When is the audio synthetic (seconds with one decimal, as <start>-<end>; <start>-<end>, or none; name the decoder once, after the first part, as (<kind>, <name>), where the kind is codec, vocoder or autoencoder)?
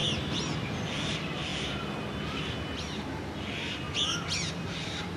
0.0-1.5 (vocoder, BigVGAN v2); 4.5-5.2